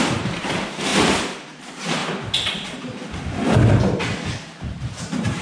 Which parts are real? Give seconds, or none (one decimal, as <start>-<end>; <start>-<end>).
0.9-1.6; 2.0-5.0